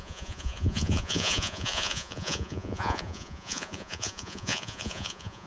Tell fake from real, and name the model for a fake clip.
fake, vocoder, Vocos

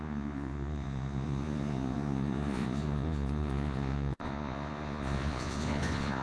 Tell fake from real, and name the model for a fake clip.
fake, vocoder, Vocos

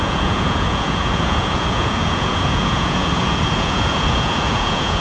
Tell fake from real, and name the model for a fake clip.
fake, vocoder, Vocos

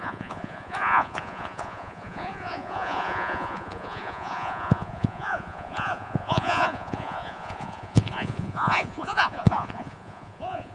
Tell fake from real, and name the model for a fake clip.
fake, vocoder, Vocos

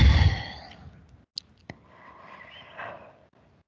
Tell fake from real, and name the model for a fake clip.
real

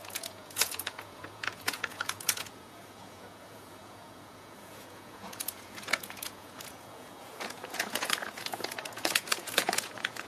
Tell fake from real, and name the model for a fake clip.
fake, vocoder, Vocos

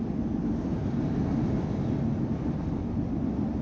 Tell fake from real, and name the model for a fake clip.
real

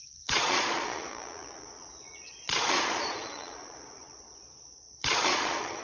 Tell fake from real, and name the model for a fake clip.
fake, vocoder, Vocos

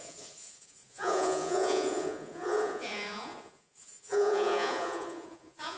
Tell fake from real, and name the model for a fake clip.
fake, vocoder, Vocos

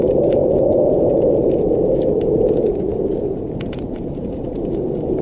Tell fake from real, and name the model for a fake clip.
fake, vocoder, Vocos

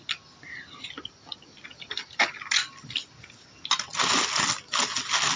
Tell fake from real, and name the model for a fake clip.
real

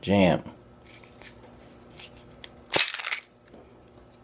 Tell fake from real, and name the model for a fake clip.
real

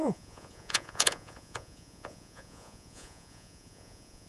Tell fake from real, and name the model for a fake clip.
fake, vocoder, Vocos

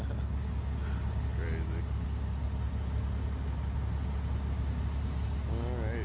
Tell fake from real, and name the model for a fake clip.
real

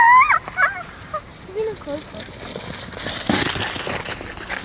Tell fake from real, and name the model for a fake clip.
real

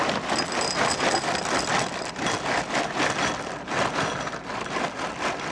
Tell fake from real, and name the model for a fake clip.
real